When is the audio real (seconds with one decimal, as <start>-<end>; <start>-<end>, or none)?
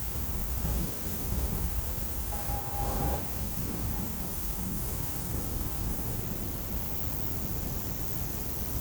6.2-8.8